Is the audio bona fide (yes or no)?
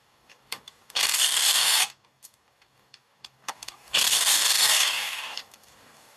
no